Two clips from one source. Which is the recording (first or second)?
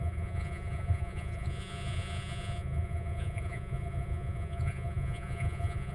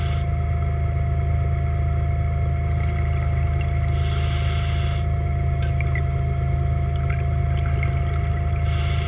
second